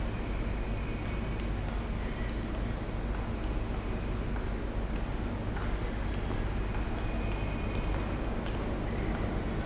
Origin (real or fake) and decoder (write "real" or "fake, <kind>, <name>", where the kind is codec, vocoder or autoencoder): real